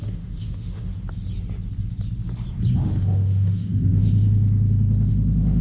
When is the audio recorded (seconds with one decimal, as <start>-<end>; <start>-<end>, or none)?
0.9-2.8